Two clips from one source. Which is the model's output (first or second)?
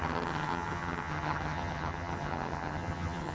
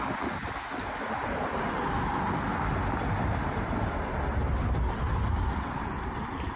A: first